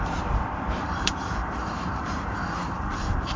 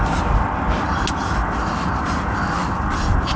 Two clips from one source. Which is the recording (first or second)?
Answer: second